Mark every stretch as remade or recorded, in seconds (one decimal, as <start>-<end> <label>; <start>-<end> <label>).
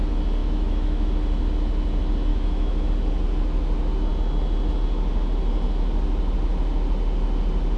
0.0-0.4 recorded; 0.4-1.1 remade; 1.1-2.3 recorded; 2.3-2.9 remade; 2.9-7.8 recorded